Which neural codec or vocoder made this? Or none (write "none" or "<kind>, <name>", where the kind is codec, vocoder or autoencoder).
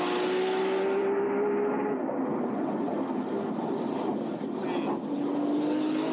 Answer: none